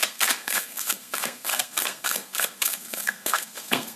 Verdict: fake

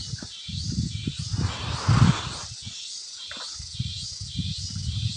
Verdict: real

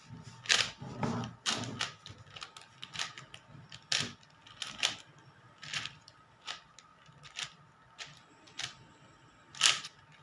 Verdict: real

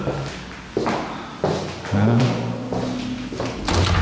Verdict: real